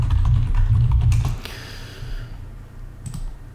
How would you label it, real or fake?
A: fake